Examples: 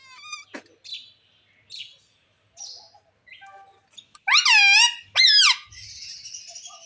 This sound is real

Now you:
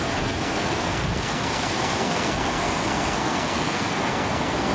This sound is fake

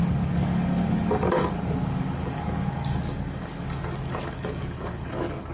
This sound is fake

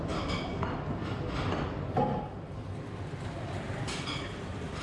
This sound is real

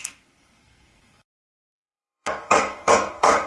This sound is fake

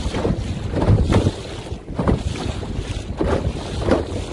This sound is real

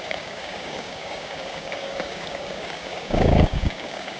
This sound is fake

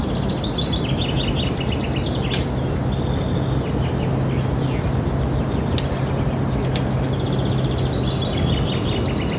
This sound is real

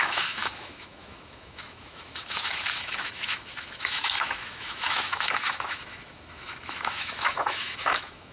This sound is fake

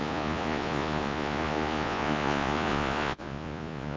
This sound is fake